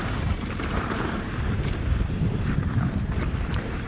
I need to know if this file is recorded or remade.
remade